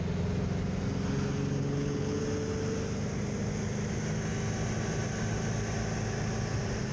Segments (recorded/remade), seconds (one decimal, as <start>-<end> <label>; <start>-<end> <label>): 0.0-1.6 recorded; 1.6-2.2 remade; 2.2-6.9 recorded